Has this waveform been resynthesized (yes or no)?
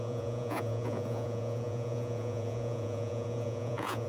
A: yes